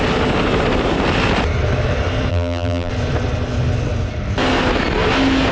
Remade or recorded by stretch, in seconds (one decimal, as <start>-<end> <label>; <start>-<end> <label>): 0.0-2.3 recorded; 2.3-2.9 remade; 2.9-5.5 recorded